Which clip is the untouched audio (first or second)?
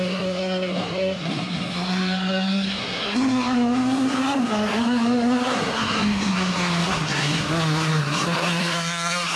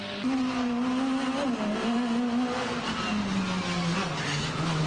second